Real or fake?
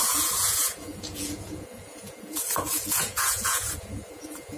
fake